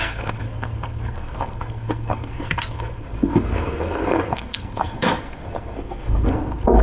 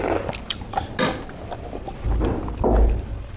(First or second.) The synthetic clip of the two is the first